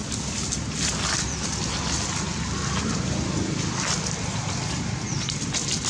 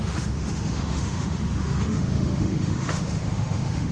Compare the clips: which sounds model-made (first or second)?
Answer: second